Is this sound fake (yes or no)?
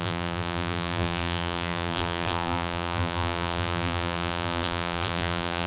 yes